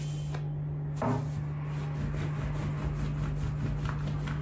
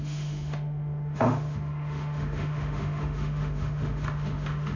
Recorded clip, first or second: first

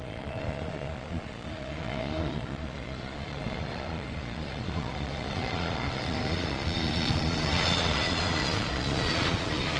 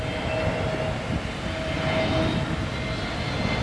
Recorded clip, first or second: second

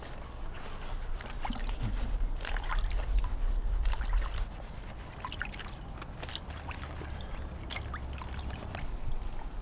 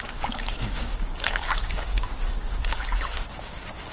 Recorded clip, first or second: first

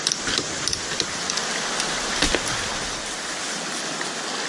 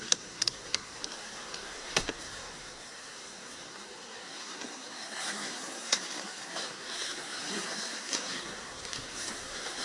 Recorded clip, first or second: first